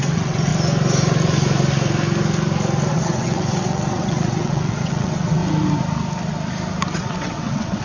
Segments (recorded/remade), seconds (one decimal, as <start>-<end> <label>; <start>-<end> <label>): 0.0-0.5 remade; 0.5-2.9 recorded; 2.9-5.4 remade; 5.4-6.9 recorded; 6.9-7.8 remade